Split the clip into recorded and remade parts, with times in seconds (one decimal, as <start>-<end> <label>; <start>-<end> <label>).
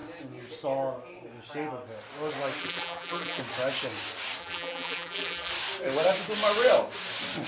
0.0-2.6 recorded; 2.6-3.4 remade; 3.4-4.4 recorded; 4.4-5.5 remade; 5.5-7.5 recorded